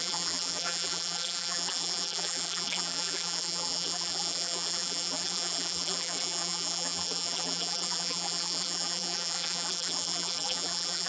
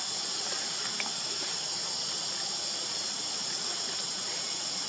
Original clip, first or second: second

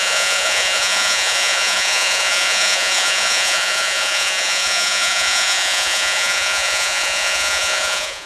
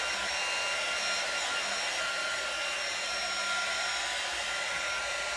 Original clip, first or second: second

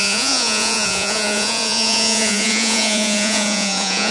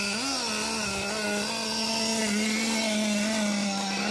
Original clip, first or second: second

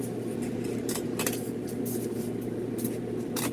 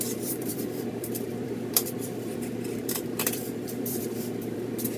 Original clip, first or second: first